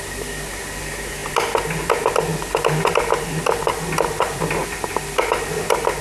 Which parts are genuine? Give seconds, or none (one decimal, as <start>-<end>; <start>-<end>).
0.0-6.0